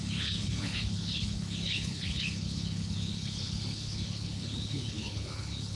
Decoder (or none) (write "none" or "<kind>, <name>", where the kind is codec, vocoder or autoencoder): codec, HILCodec